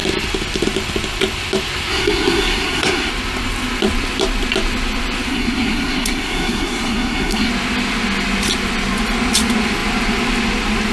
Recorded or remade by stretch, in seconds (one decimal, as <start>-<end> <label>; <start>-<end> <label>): 0.0-1.9 recorded; 1.9-3.1 remade; 3.1-5.3 recorded; 5.3-7.5 remade; 7.5-10.9 recorded